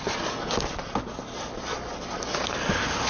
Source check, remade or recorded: recorded